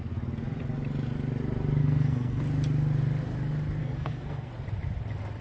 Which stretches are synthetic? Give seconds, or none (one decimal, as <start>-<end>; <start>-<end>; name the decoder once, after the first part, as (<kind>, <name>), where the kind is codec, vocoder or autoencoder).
1.8-2.4 (codec, SNAC); 3.8-4.5